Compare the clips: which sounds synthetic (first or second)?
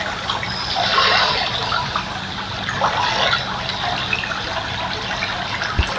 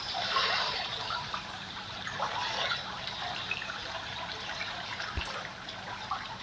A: second